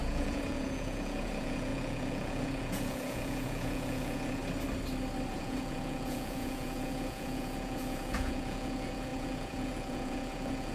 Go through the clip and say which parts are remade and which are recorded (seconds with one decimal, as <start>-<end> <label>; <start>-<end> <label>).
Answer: 0.0-4.4 remade; 4.4-5.3 recorded; 5.3-10.7 remade